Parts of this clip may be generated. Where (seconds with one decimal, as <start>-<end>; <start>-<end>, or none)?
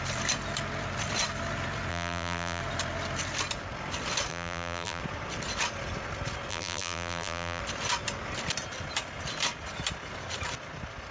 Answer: 1.9-2.6; 4.3-5.0; 6.5-7.6